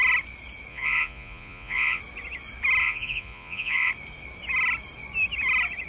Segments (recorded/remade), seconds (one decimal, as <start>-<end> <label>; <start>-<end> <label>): 0.0-0.7 recorded; 0.7-2.0 remade; 2.0-2.8 recorded; 2.8-3.9 remade; 3.9-5.9 recorded